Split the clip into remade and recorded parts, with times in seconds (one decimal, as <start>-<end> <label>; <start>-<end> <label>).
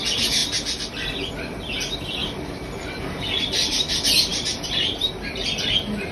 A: 0.0-2.2 recorded; 2.2-3.8 remade; 3.8-4.3 recorded; 4.3-5.1 remade; 5.1-6.1 recorded